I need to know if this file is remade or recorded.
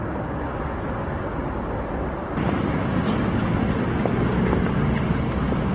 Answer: recorded